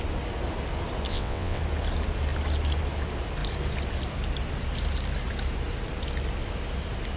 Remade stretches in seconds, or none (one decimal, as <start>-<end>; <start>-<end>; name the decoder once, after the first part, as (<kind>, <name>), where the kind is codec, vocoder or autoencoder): 1.1-1.6 (vocoder, WaveNeXt)

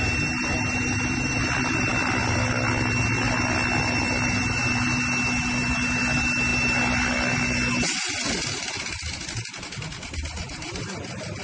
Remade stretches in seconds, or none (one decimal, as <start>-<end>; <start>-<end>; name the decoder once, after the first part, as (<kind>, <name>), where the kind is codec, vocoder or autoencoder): none

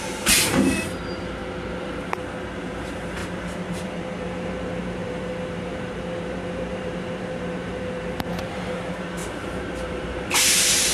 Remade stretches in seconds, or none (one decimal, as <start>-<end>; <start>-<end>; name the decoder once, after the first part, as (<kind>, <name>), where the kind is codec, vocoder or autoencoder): 0.0-1.4 (vocoder, BigVGAN v2); 2.6-10.9

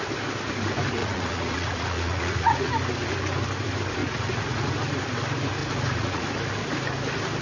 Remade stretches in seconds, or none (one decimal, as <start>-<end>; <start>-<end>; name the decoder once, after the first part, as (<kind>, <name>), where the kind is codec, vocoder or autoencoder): 1.0-2.7 (vocoder, Vocos); 4.0-4.7; 5.6-6.2

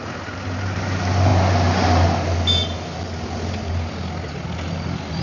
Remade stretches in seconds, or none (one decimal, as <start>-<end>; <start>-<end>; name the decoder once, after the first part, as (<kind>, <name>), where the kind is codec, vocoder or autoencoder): none